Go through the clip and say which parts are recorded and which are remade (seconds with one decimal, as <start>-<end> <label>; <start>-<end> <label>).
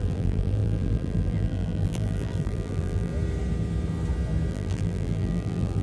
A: 0.0-3.1 remade; 3.1-4.5 recorded; 4.5-5.8 remade